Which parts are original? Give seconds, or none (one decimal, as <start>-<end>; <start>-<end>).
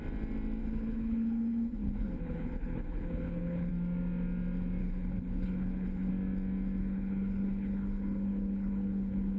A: 0.0-0.6; 3.7-4.8; 6.1-6.8